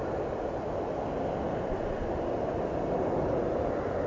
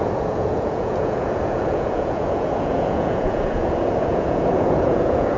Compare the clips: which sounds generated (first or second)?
second